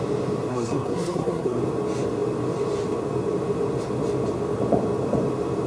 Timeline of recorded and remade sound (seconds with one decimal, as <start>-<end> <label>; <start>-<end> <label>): 0.0-0.5 recorded; 0.5-1.6 remade; 1.6-5.7 recorded